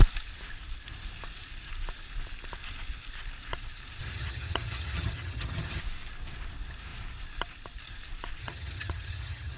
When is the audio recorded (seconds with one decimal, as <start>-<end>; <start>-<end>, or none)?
0.0-4.0; 5.8-8.4